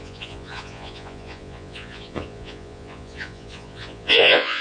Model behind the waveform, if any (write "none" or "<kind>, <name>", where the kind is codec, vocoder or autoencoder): vocoder, Vocos